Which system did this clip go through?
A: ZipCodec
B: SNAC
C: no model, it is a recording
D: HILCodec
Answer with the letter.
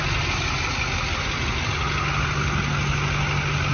C